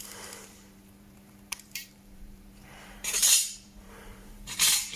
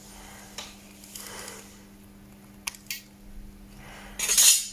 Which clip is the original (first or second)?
second